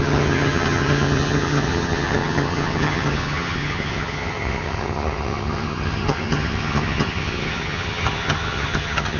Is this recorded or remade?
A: remade